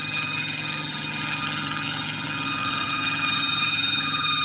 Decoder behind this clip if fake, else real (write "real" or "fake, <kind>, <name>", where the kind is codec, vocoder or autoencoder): fake, vocoder, HiFi-GAN